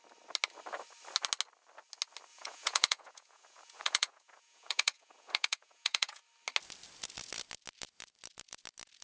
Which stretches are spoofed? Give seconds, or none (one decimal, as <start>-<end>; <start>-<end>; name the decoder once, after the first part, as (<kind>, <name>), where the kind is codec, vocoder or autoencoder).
2.3-6.2 (vocoder, Vocos)